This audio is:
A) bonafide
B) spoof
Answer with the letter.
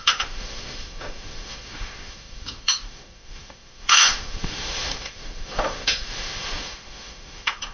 B